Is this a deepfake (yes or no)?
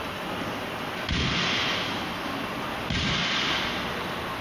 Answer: no